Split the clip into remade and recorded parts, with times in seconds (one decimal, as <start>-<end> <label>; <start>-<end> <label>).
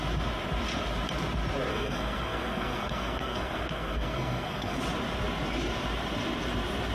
0.0-1.7 recorded; 1.7-4.8 remade; 4.8-6.9 recorded